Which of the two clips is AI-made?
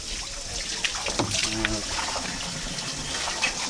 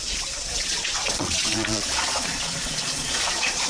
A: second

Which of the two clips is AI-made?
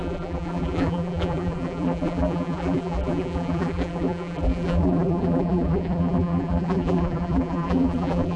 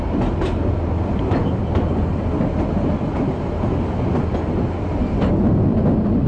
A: first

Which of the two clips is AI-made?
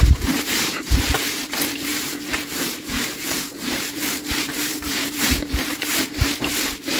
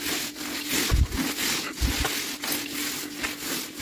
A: first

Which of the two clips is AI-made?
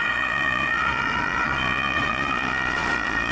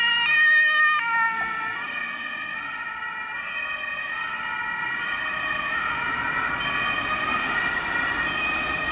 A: first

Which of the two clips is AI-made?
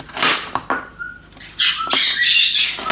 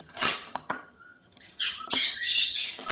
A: second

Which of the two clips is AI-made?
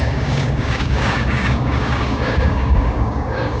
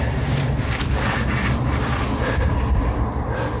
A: first